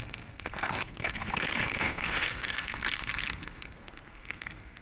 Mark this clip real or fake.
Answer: fake